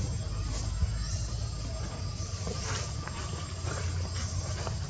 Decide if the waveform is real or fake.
real